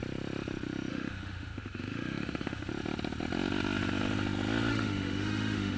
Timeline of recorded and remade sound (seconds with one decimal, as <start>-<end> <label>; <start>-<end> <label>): 0.0-0.9 recorded; 0.9-2.7 remade; 2.7-4.7 recorded; 4.7-5.8 remade